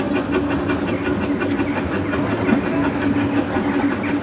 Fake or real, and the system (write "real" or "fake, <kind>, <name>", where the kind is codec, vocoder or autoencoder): real